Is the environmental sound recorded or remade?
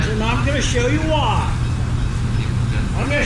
recorded